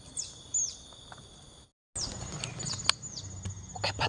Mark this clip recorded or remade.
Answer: recorded